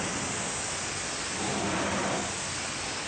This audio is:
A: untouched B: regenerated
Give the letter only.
A